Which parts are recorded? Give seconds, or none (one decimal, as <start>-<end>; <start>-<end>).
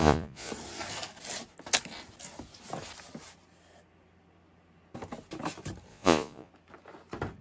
0.5-5.9; 6.5-7.4